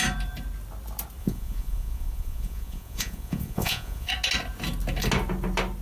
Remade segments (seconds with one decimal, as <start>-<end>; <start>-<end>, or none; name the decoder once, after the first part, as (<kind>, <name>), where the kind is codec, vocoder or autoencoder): 1.2-4.1 (vocoder, Vocos)